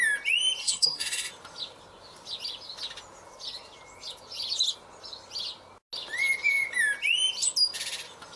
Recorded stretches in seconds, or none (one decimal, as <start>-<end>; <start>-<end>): 0.0-0.6; 1.3-8.4